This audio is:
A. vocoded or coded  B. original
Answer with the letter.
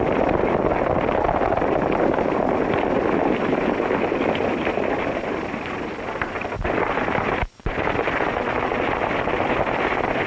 B